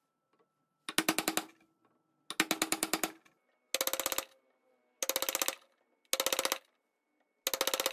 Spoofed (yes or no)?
no